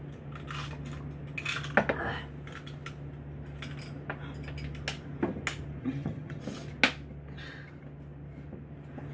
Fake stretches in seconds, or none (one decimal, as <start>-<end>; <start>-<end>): 5.8-6.4

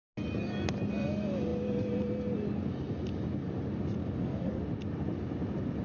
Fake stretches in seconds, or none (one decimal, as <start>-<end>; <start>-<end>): 4.0-4.6

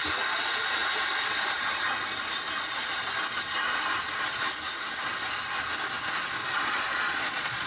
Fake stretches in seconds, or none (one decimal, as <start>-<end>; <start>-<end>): 6.4-7.7

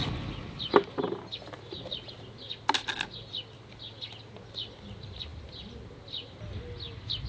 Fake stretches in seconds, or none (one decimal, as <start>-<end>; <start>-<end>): none

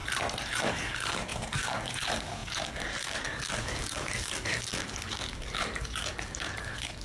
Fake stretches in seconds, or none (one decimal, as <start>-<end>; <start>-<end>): 0.6-7.0

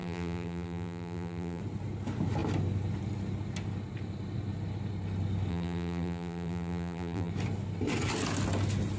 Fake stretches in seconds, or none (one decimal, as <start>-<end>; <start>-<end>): 0.0-1.6; 5.5-7.3

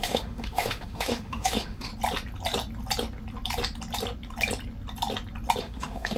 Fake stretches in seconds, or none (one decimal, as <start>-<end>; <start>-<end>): 0.0-1.9; 5.6-6.2

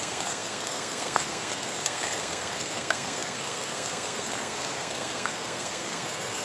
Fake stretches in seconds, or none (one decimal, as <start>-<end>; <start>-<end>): 0.0-6.4